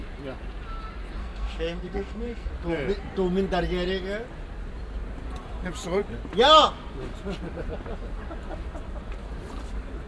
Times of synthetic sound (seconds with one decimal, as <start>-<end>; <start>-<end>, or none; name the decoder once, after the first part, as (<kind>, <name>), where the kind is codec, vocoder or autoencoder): 1.2-2.5 (codec, SNAC)